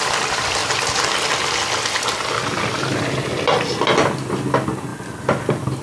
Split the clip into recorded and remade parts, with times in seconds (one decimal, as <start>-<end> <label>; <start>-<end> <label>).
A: 0.0-5.8 recorded